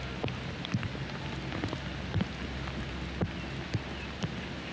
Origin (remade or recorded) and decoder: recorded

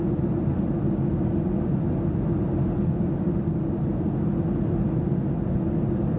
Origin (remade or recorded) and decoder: recorded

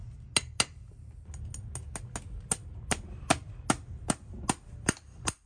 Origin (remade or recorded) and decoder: recorded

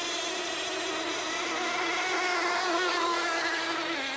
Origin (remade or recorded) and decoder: recorded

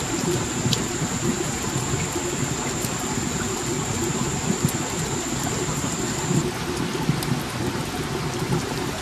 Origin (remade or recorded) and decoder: recorded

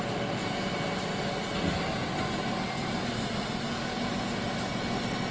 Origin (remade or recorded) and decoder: recorded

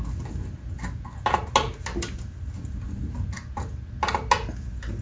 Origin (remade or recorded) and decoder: recorded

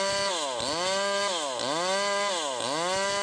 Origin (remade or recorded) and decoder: recorded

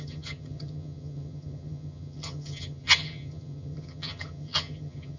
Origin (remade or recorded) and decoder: remade, vocoder, HiFi-GAN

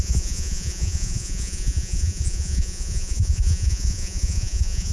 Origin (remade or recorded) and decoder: remade, vocoder, Vocos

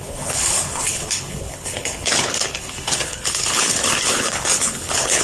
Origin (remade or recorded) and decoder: remade, codec, HILCodec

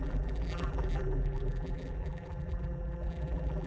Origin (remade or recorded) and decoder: remade, vocoder, BigVGAN v2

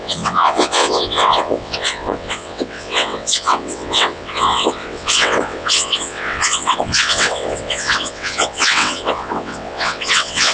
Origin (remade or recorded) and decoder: remade, vocoder, WaveNeXt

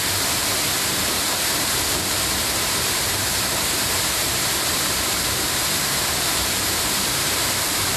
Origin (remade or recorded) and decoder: remade, vocoder, BigVGAN v2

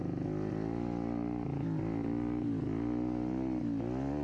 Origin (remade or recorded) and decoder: recorded